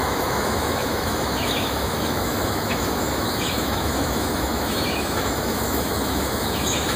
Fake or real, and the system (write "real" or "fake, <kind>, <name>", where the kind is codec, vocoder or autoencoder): fake, autoencoder, DAC-VAE